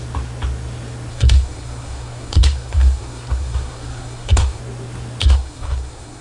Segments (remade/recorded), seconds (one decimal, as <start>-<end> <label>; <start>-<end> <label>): 0.0-1.1 recorded; 1.1-4.6 remade; 4.6-5.2 recorded; 5.2-6.2 remade